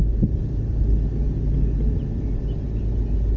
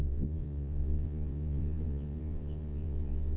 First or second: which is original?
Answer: first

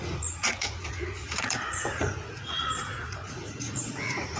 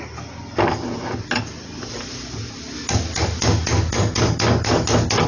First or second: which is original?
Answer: second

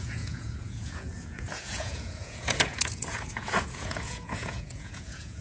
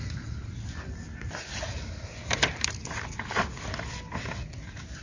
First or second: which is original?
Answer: second